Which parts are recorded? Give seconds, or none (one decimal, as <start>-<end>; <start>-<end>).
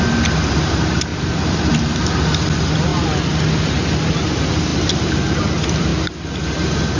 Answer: 0.0-1.1; 2.0-7.0